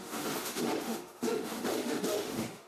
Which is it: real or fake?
fake